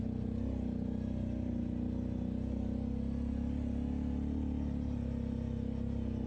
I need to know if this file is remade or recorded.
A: recorded